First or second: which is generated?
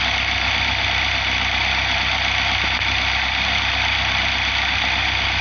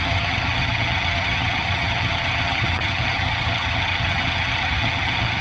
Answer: second